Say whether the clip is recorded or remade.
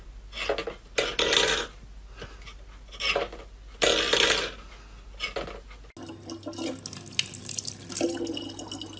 recorded